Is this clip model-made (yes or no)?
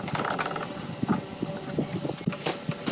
no